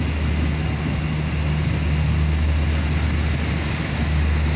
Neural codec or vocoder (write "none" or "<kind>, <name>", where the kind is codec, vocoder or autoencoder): none